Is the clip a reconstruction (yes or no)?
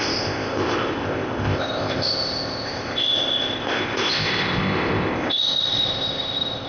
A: yes